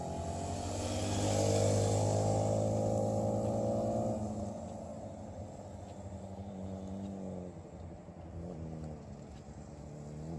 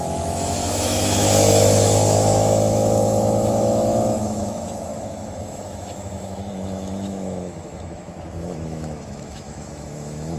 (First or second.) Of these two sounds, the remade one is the second